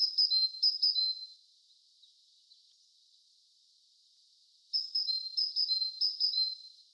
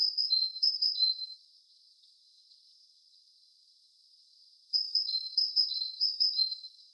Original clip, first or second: first